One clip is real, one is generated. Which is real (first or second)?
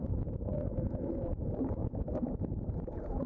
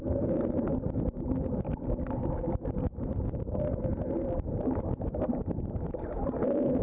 second